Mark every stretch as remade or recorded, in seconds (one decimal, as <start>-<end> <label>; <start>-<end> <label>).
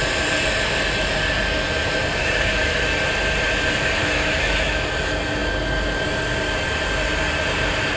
0.0-2.2 recorded; 2.2-2.8 remade; 2.8-4.0 recorded; 4.0-4.9 remade; 4.9-8.0 recorded